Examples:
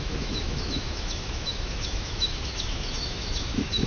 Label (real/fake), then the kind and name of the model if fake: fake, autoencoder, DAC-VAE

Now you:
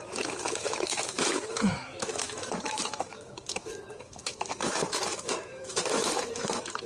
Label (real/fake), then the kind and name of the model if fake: fake, autoencoder, DAC-VAE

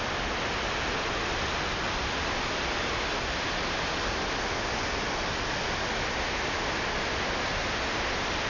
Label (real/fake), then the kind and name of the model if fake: real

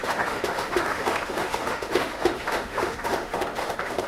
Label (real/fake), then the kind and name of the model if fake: fake, autoencoder, DAC-VAE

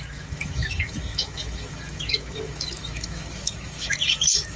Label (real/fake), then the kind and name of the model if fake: fake, autoencoder, DAC-VAE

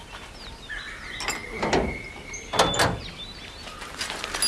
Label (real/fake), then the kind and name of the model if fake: real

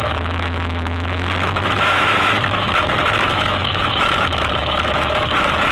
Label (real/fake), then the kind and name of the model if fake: fake, autoencoder, DAC-VAE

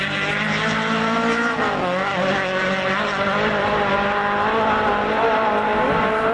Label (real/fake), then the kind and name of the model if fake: real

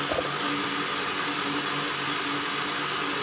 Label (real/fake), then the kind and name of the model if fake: real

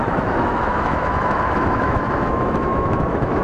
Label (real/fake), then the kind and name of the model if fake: fake, autoencoder, DAC-VAE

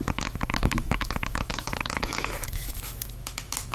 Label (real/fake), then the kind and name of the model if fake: fake, autoencoder, DAC-VAE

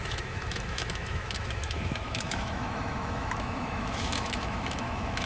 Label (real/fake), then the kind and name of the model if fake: fake, autoencoder, DAC-VAE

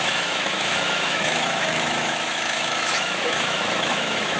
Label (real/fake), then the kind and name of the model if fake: fake, autoencoder, DAC-VAE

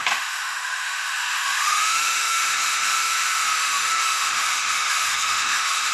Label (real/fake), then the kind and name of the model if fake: fake, autoencoder, DAC-VAE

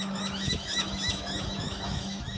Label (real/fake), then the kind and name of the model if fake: fake, autoencoder, DAC-VAE